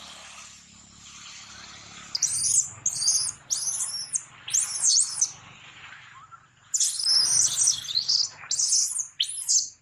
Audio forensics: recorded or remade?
recorded